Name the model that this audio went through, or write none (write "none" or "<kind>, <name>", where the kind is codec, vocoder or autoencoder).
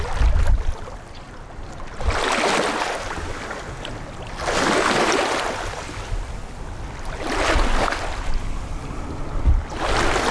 none